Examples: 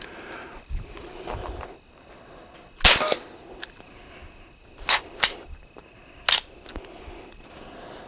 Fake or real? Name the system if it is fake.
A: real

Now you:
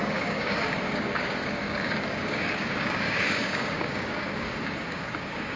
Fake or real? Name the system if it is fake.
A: fake, codec, DAC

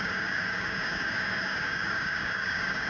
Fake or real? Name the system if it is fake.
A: fake, codec, DAC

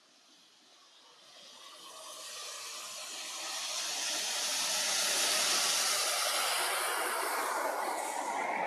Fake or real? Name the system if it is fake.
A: real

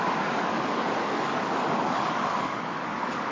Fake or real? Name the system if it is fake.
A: fake, codec, DAC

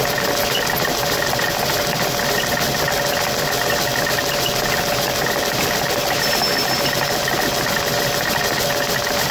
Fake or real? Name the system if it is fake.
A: real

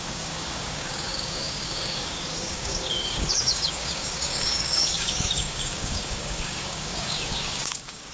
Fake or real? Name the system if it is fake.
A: fake, codec, DAC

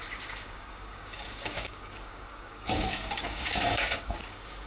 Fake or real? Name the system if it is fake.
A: fake, codec, DAC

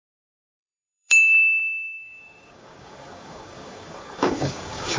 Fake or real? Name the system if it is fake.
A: fake, codec, DAC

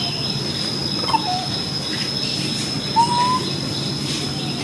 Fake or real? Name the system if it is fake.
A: real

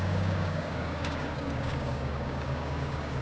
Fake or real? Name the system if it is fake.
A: fake, codec, DAC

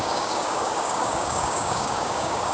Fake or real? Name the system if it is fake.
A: fake, codec, DAC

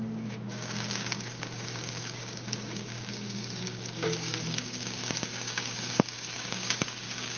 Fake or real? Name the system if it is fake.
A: fake, codec, DAC